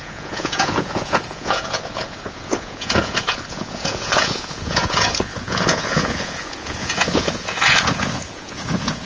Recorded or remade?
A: remade